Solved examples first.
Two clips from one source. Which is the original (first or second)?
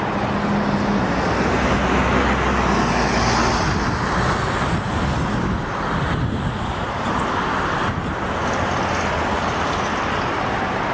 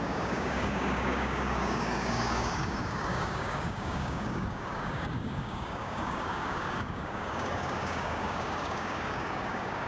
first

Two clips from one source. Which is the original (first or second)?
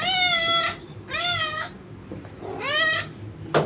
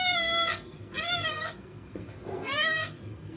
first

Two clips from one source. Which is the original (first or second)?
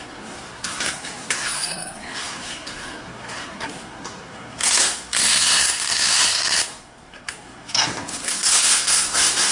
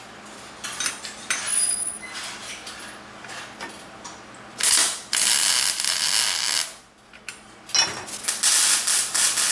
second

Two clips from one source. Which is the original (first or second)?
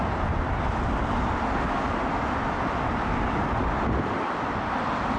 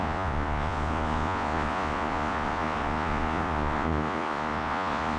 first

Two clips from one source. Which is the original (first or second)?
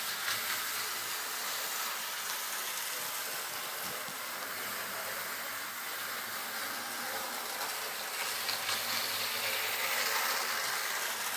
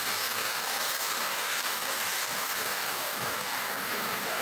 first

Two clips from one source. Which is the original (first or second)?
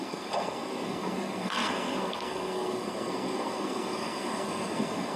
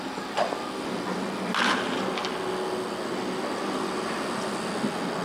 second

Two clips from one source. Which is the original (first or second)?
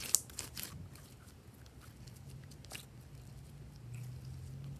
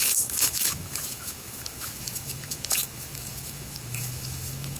first